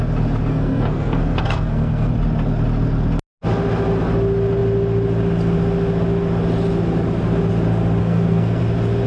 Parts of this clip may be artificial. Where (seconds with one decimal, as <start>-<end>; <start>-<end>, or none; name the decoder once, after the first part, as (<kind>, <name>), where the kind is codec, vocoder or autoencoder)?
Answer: 0.5-2.1 (codec, SNAC); 8.0-8.6